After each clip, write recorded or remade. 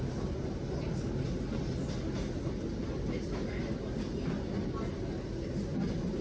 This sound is recorded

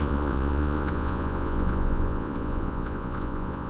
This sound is remade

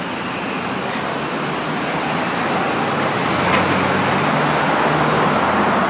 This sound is recorded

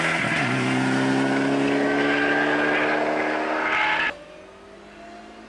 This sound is recorded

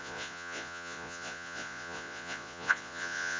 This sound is remade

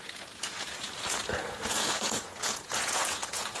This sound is remade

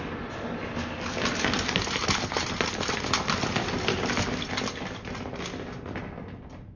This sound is recorded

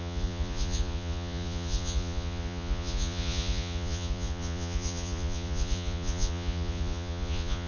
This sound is remade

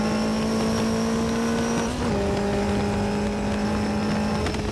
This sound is recorded